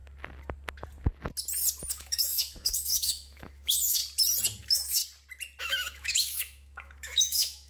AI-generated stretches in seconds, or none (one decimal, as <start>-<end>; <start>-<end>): 1.9-4.0; 4.6-5.0; 5.6-7.7